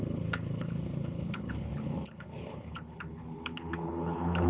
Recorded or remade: remade